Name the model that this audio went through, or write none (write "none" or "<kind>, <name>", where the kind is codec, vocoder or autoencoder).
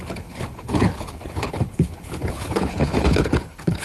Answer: codec, HILCodec